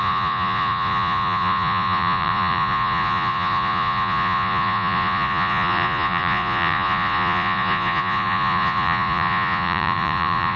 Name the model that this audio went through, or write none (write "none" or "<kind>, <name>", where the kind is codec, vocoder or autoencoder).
vocoder, Vocos